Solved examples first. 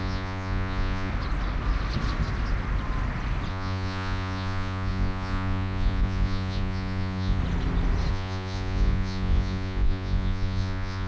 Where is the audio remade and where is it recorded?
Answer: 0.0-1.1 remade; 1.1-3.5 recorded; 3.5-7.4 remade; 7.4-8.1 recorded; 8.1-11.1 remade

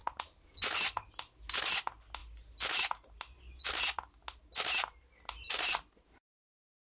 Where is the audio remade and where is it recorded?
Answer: 0.0-6.9 recorded

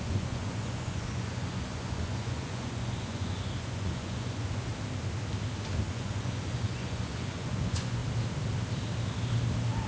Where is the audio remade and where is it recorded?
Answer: 0.0-4.7 remade; 4.7-5.9 recorded; 5.9-8.0 remade; 8.0-9.9 recorded